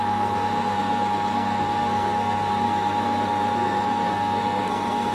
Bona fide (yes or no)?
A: no